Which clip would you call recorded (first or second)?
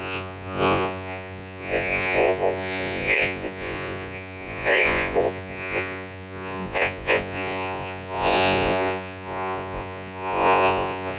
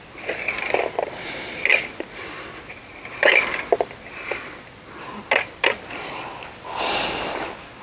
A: second